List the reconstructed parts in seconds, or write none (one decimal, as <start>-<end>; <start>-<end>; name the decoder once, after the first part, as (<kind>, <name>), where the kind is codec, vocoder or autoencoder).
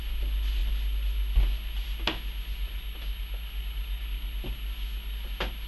none